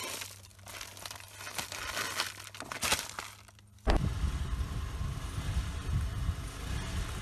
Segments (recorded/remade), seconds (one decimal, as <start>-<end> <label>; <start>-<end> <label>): 0.0-7.2 recorded